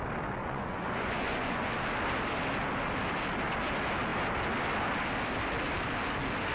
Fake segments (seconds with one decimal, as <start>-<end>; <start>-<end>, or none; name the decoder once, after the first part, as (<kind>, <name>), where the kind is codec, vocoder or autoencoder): 0.4-1.7 (vocoder, Vocos)